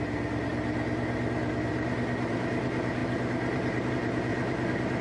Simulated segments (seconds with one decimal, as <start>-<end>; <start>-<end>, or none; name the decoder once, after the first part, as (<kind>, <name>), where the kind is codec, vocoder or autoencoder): 0.0-0.5 (vocoder, BigVGAN v2); 1.7-4.3